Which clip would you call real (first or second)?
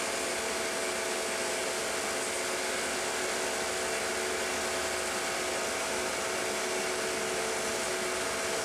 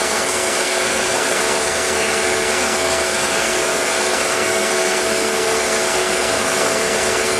first